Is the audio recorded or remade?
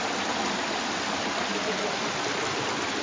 remade